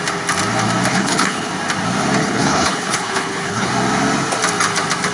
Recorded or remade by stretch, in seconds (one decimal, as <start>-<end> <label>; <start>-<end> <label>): 0.0-0.9 recorded; 0.9-1.5 remade; 1.5-2.2 recorded; 2.2-3.7 remade; 3.7-5.1 recorded